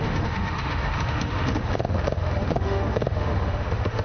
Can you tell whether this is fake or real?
fake